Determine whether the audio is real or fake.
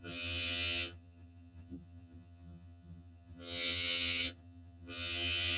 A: fake